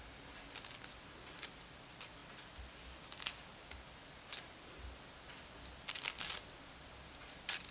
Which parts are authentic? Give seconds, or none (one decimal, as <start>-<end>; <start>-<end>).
0.0-7.7